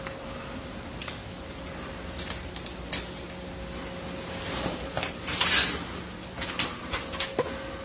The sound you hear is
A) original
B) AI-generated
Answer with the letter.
A